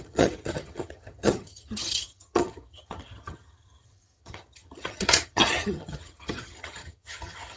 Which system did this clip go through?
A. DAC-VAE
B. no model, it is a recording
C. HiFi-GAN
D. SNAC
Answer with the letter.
C